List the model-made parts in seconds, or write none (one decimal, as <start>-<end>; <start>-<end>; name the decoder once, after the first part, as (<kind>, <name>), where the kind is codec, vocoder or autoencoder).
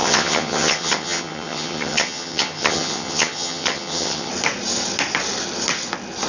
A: 0.0-4.3 (vocoder, HiFi-GAN)